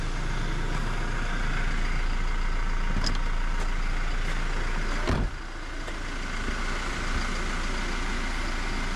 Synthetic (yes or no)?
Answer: no